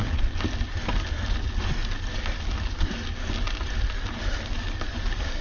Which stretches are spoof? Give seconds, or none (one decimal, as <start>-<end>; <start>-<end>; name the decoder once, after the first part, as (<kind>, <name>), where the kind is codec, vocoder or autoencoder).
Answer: none